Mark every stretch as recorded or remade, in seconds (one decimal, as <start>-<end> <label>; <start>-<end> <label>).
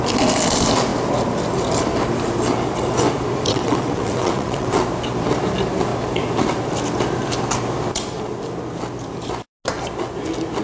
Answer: 0.0-3.5 recorded; 3.5-4.8 remade; 4.8-10.6 recorded